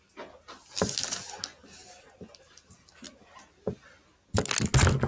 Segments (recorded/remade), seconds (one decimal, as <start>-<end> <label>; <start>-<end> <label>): 0.0-5.1 recorded